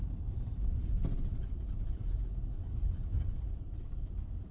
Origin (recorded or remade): remade